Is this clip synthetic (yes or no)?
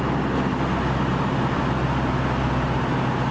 no